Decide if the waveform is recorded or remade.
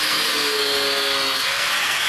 remade